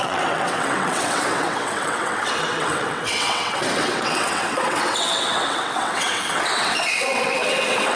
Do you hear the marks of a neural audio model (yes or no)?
yes